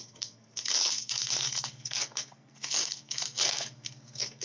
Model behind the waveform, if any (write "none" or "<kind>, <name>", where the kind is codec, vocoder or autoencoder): codec, SNAC